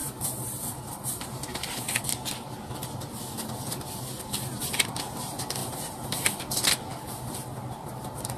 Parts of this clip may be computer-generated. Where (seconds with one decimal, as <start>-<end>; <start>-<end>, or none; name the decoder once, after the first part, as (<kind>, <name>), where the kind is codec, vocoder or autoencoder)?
5.6-6.2 (vocoder, BigVGAN v2)